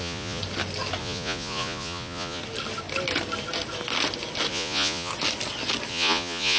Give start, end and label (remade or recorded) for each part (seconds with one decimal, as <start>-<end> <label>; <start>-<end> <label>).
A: 0.0-0.4 remade; 0.4-1.0 recorded; 1.0-2.4 remade; 2.4-4.5 recorded; 4.5-5.1 remade; 5.1-5.9 recorded; 5.9-6.6 remade